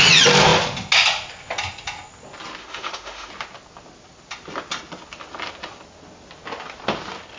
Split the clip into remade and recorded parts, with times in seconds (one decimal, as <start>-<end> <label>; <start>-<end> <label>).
0.0-2.6 recorded; 2.6-3.3 remade; 3.3-7.4 recorded